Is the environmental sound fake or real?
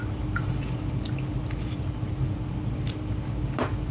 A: real